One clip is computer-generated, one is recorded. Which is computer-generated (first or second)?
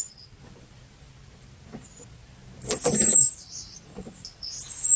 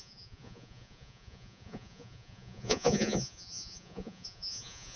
second